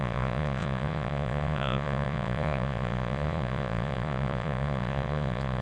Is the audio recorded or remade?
remade